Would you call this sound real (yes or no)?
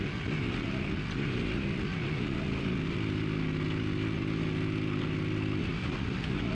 yes